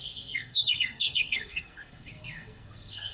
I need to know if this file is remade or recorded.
remade